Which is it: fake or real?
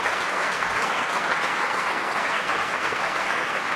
fake